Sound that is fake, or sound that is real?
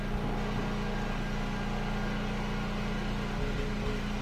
real